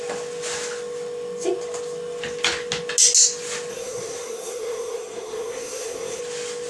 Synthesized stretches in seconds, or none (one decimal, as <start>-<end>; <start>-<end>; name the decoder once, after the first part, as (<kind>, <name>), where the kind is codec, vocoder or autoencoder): 3.7-6.2 (codec, SNAC)